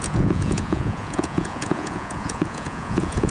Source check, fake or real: fake